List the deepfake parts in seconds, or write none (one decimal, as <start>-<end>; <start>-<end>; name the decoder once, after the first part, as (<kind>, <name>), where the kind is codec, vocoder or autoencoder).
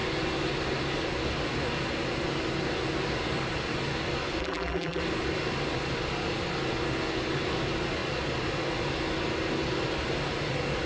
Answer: 4.4-5.0 (vocoder, BigVGAN v2)